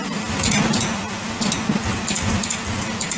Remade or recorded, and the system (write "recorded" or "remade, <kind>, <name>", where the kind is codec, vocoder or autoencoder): recorded